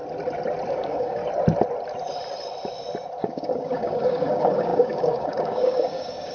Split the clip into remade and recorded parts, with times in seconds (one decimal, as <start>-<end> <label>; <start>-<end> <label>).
0.0-0.7 recorded; 0.7-1.2 remade; 1.2-3.2 recorded; 3.2-6.3 remade